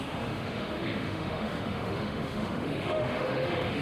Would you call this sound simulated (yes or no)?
yes